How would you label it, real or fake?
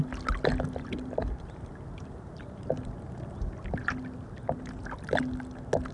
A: real